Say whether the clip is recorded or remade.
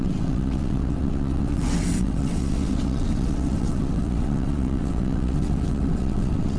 remade